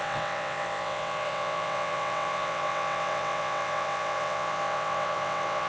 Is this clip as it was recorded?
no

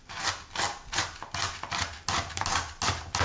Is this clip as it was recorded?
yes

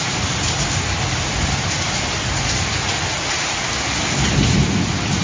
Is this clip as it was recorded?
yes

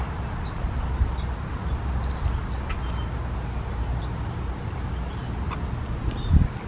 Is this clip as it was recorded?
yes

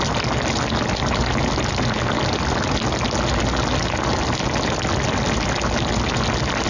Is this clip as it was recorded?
yes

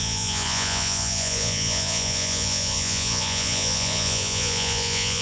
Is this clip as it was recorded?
no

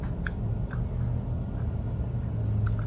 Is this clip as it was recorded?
yes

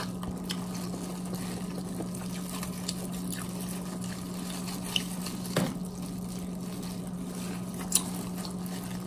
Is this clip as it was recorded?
yes